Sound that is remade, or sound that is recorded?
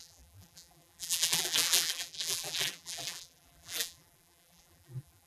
remade